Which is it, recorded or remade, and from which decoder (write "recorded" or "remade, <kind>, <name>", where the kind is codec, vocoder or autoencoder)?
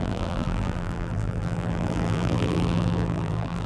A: remade, vocoder, BigVGAN v2